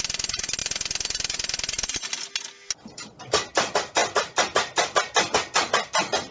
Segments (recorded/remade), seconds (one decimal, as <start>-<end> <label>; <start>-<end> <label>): 0.0-6.3 recorded

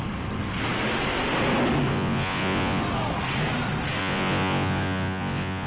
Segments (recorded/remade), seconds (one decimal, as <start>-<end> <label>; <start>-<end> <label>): 0.0-1.9 recorded; 1.9-2.8 remade; 2.8-4.0 recorded; 4.0-5.7 remade